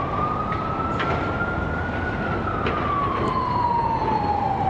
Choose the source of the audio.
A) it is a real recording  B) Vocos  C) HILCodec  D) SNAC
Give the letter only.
A